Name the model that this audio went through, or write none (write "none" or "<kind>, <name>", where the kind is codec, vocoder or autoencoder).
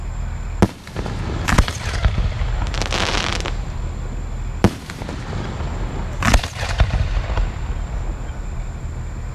none